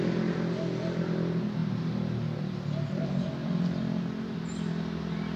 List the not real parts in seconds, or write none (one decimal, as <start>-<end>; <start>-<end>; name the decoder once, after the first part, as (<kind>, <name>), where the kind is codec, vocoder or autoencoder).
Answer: none